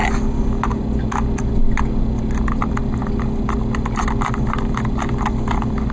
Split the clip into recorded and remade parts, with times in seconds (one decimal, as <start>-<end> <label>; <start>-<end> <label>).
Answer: 0.0-5.9 recorded